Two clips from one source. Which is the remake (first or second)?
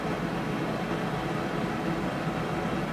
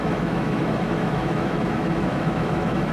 second